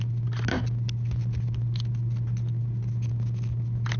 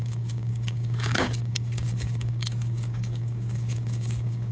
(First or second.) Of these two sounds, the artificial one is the second